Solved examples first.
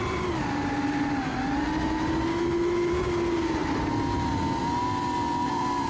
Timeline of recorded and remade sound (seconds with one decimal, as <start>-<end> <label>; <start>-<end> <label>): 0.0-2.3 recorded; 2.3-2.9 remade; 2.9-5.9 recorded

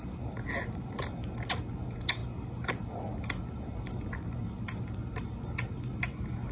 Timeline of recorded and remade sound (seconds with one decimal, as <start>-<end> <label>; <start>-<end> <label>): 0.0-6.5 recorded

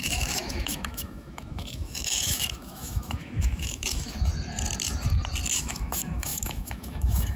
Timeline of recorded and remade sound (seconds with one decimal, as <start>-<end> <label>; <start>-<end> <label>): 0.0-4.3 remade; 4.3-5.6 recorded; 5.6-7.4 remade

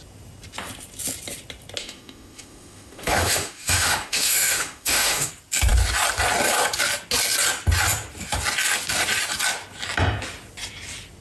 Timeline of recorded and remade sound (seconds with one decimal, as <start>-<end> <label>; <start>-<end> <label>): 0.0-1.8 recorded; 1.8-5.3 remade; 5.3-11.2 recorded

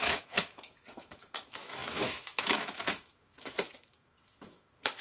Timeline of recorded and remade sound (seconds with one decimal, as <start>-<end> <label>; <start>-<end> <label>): 0.0-5.0 remade

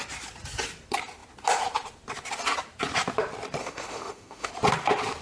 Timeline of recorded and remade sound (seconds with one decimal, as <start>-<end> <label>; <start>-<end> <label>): 0.0-3.6 recorded; 3.6-4.5 remade; 4.5-5.2 recorded

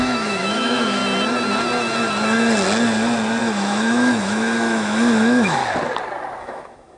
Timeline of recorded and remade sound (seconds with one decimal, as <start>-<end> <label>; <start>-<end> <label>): 0.0-1.0 remade; 1.0-3.4 recorded; 3.4-5.6 remade; 5.6-6.4 recorded; 6.4-7.0 remade